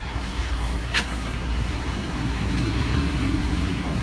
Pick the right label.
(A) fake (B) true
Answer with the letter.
A